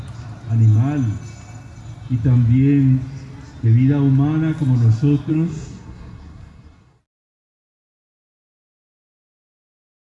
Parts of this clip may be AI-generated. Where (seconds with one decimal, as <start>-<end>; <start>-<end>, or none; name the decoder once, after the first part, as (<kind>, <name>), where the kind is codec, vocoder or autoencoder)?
5.3-7.0 (codec, SNAC)